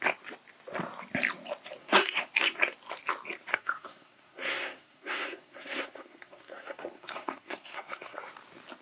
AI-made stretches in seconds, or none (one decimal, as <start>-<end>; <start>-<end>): 1.8-2.3; 3.5-8.2